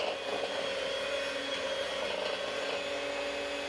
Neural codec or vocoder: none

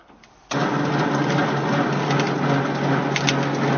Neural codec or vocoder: none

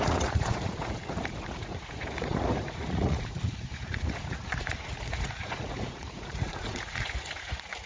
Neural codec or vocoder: vocoder, Vocos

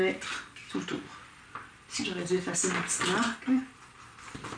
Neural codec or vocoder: none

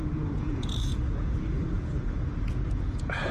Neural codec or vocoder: vocoder, Vocos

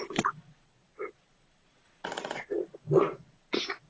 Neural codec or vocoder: vocoder, Vocos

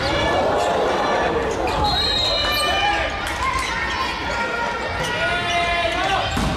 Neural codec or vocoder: none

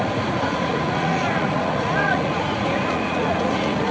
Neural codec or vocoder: vocoder, Vocos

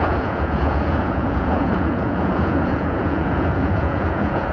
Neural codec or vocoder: vocoder, Vocos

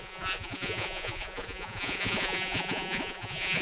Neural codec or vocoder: vocoder, Vocos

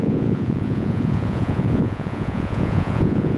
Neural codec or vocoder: vocoder, Vocos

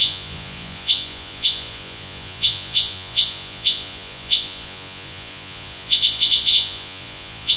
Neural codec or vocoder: vocoder, Vocos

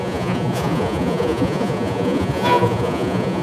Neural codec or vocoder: vocoder, Vocos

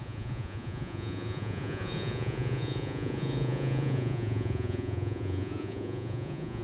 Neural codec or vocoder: vocoder, Vocos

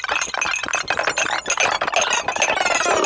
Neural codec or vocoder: none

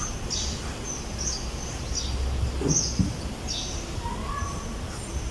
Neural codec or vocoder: none